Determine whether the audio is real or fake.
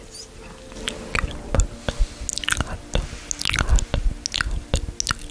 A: real